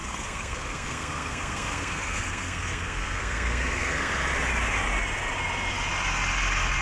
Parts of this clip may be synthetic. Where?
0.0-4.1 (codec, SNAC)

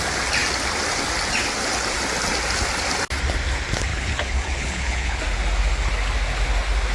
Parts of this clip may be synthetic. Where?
3.9-5.2 (codec, HILCodec)

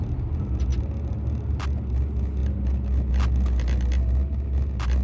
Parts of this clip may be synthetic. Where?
none

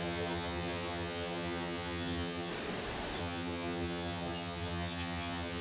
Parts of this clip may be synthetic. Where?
0.0-2.5 (vocoder, HiFi-GAN); 3.2-5.6

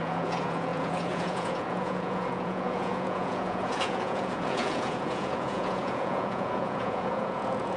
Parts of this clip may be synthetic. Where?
0.0-7.8 (vocoder, Vocos)

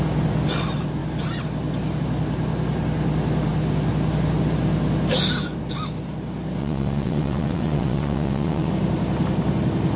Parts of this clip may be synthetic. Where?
6.6-8.7 (vocoder, WaveNeXt)